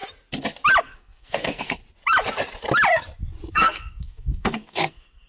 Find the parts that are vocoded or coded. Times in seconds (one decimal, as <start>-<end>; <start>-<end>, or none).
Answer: 0.8-1.8; 3.5-5.3